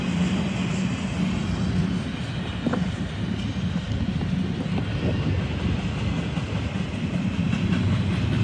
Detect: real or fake real